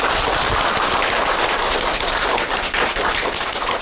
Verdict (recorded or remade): recorded